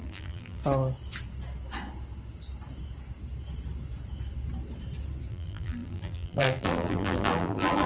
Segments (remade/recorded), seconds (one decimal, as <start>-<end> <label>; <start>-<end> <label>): 0.0-0.6 remade; 0.6-5.3 recorded; 5.3-7.9 remade